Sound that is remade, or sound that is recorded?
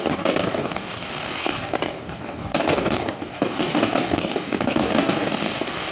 remade